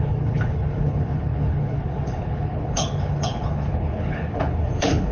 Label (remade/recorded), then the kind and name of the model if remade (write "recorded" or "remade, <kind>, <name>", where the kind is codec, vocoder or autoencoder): remade, codec, HILCodec